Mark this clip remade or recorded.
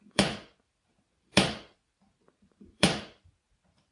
remade